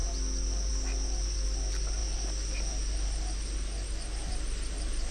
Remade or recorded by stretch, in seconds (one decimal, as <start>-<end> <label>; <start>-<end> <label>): 0.0-5.1 recorded